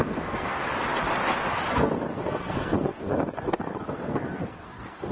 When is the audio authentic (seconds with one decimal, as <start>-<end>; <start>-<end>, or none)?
0.6-1.7